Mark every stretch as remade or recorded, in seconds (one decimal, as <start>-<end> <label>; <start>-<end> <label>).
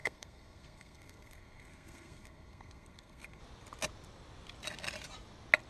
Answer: 0.0-3.4 remade; 3.4-5.7 recorded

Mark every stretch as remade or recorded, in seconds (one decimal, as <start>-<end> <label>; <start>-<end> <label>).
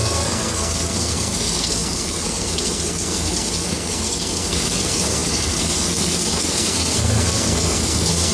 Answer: 0.0-8.3 remade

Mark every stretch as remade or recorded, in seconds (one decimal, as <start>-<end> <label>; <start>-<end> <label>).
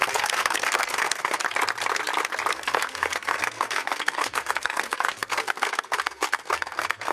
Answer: 0.0-1.4 remade; 1.4-2.5 recorded; 2.5-7.1 remade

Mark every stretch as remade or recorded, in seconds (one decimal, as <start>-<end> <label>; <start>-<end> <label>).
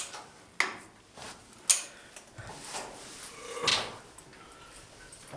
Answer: 0.0-5.4 recorded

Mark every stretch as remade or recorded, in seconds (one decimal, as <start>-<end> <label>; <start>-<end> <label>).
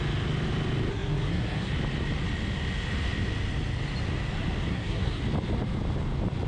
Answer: 0.0-0.9 recorded; 0.9-1.7 remade; 1.7-4.7 recorded; 4.7-5.2 remade; 5.2-6.5 recorded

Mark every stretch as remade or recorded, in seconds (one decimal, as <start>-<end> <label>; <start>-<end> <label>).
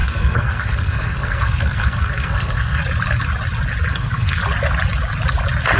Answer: 0.0-2.8 remade; 2.8-3.9 recorded; 3.9-4.4 remade; 4.4-5.8 recorded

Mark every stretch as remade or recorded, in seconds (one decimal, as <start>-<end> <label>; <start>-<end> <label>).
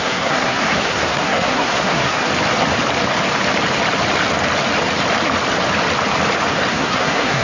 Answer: 0.0-2.3 remade; 2.3-6.7 recorded; 6.7-7.4 remade